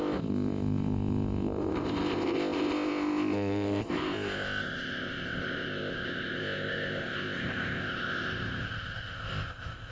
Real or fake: fake